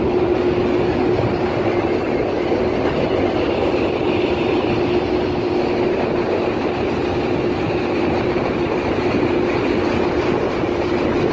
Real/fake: real